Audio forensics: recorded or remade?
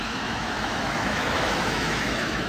remade